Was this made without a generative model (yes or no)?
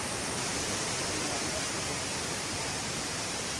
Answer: no